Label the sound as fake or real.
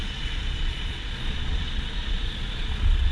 fake